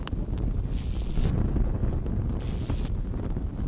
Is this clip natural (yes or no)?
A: yes